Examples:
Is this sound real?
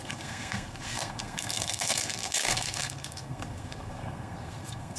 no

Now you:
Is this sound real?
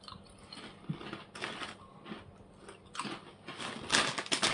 yes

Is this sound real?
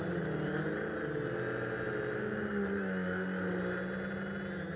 yes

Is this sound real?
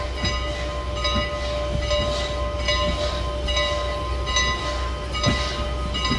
yes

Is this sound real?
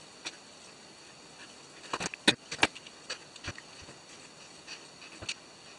yes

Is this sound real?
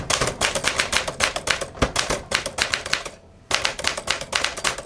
yes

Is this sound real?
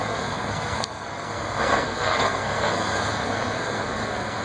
no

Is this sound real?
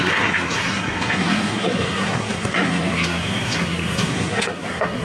no